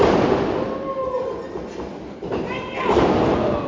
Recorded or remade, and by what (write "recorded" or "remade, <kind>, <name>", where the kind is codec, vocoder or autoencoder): recorded